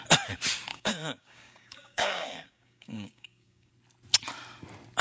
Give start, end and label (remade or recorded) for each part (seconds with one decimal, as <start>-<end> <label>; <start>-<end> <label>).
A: 0.0-0.7 recorded; 0.7-3.7 remade; 3.7-5.0 recorded